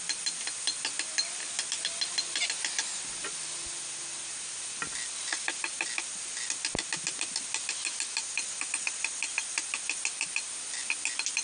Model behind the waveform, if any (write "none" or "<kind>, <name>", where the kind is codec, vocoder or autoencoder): none